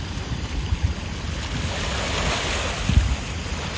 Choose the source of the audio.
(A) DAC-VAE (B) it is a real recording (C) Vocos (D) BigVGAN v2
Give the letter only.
B